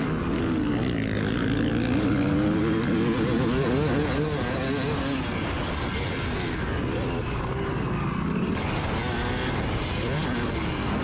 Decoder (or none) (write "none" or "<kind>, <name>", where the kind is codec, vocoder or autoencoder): none